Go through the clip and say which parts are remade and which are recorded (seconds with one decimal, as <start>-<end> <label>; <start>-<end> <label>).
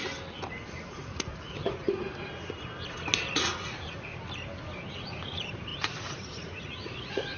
0.0-0.9 recorded; 0.9-2.3 remade; 2.3-3.3 recorded; 3.3-4.1 remade; 4.1-4.9 recorded; 4.9-7.4 remade